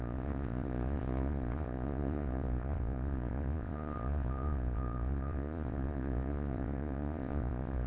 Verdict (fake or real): fake